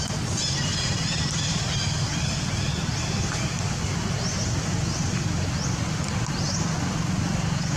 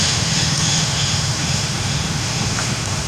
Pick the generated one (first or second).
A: second